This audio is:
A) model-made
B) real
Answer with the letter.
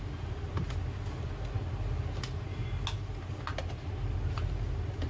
B